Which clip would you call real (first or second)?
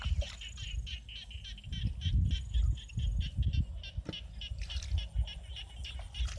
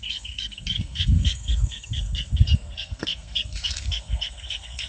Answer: first